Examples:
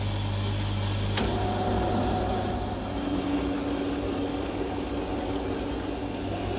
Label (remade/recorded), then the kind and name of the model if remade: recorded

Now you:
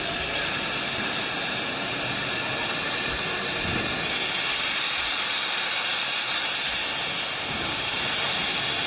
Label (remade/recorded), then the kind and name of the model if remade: recorded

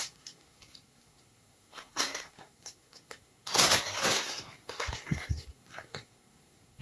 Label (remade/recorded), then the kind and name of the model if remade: remade, codec, SNAC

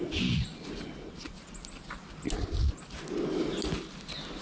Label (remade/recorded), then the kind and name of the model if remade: recorded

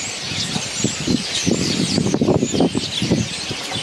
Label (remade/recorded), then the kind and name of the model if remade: recorded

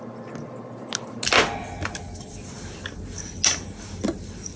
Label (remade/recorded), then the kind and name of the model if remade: recorded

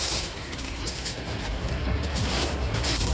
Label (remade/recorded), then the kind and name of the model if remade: remade, codec, SNAC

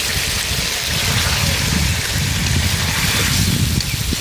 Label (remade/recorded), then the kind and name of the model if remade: recorded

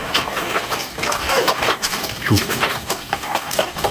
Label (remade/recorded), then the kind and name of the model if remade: remade, codec, DAC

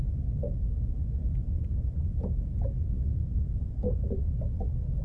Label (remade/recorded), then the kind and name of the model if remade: recorded